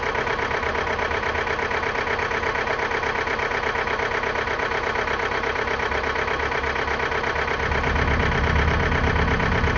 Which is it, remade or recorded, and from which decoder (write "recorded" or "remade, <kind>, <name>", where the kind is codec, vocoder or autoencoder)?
recorded